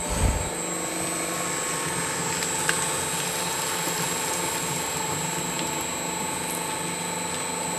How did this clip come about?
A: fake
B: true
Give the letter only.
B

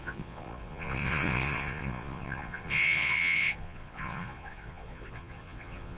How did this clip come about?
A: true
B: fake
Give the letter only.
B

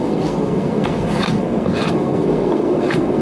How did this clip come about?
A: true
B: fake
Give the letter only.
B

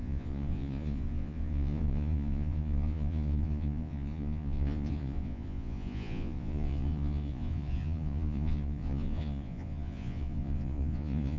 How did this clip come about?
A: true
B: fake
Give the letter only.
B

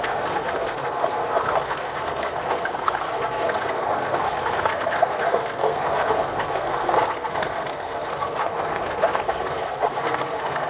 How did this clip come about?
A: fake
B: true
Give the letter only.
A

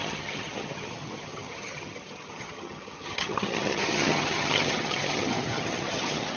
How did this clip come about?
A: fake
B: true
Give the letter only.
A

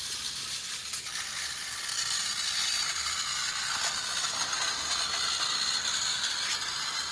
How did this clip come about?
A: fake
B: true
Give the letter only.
B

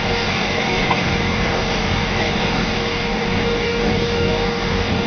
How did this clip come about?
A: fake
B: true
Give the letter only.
A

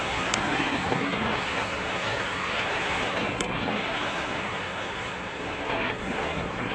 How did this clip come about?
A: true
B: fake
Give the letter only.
B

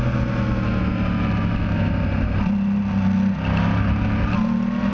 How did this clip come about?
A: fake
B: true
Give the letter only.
B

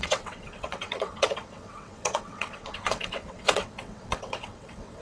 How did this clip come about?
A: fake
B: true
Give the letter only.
A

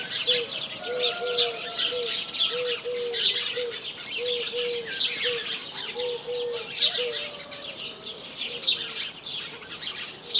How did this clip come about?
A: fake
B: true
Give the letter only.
B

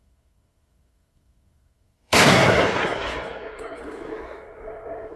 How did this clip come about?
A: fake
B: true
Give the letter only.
A